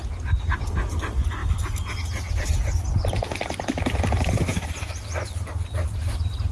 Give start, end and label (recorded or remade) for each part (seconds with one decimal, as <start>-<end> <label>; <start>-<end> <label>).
0.0-6.5 recorded